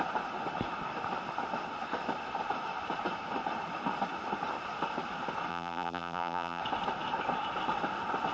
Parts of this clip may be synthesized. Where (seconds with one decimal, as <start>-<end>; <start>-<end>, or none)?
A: 5.5-6.6